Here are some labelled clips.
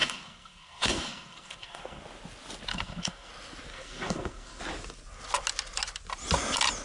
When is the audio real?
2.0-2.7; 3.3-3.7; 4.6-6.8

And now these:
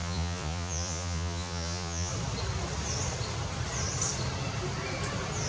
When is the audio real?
2.1-5.5

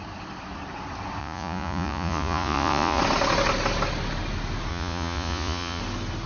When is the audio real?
0.0-1.2; 3.0-4.7; 5.8-6.3

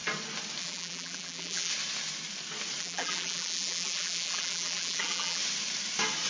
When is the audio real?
0.0-0.6; 1.7-2.8; 5.4-6.3

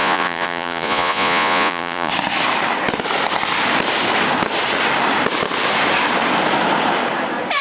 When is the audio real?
2.1-7.6

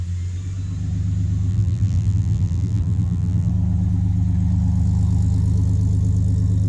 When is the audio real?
0.0-1.5; 3.5-6.7

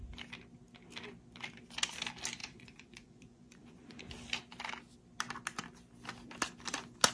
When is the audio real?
0.0-2.4; 4.0-7.1